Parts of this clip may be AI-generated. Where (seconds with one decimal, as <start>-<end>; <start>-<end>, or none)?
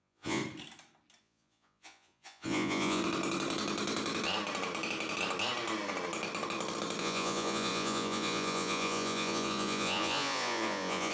0.0-0.4; 1.2-3.0; 7.0-11.1